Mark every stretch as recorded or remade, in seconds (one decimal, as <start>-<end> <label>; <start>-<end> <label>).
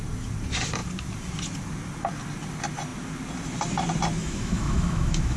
0.0-4.2 recorded; 4.2-5.4 remade